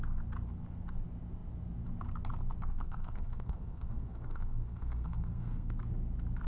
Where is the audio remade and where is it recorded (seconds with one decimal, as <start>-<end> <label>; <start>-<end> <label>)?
0.0-2.7 recorded; 2.7-5.7 remade; 5.7-6.5 recorded